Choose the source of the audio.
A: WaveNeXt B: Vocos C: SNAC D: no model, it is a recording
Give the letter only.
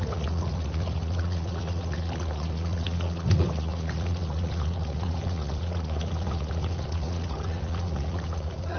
B